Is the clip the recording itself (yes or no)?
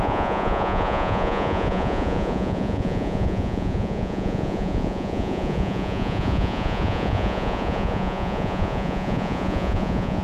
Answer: no